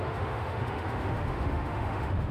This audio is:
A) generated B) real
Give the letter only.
A